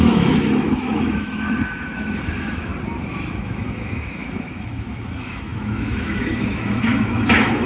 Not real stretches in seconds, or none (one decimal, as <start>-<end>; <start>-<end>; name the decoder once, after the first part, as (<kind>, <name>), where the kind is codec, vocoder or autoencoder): 0.0-2.7 (autoencoder, DAC-VAE); 3.3-7.7